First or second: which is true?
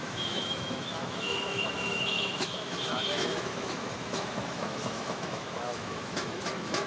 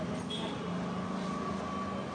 second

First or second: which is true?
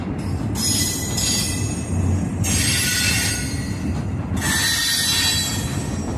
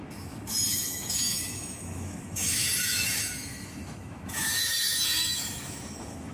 first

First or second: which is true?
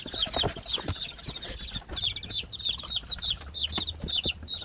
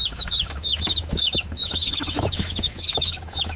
first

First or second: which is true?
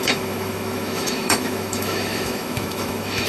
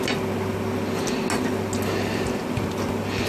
second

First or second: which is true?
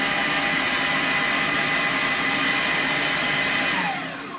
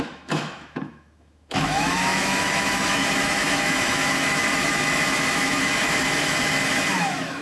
first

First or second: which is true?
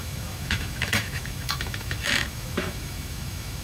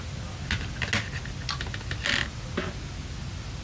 second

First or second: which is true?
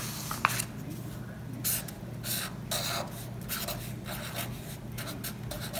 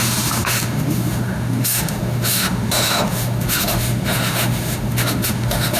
first